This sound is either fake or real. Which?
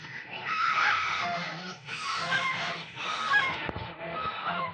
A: fake